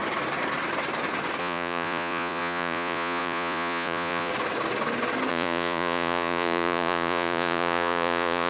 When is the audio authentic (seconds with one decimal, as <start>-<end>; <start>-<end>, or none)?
0.0-1.4; 4.3-5.3